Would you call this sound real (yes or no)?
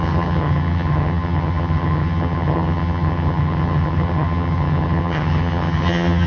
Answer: no